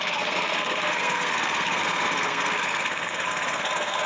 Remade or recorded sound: remade